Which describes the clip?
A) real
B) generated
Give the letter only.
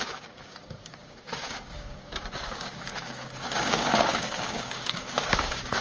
B